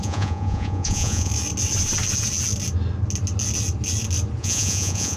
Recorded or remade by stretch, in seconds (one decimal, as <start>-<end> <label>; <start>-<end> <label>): 0.0-1.3 remade; 1.3-4.4 recorded; 4.4-5.2 remade